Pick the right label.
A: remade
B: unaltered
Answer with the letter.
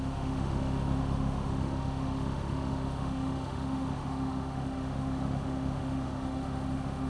A